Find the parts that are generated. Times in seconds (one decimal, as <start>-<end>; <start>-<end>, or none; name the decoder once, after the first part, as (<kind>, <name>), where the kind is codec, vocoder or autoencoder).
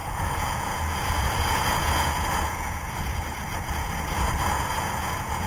0.0-5.5 (vocoder, Vocos)